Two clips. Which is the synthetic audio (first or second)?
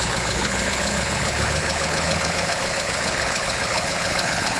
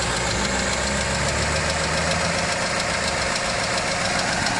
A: first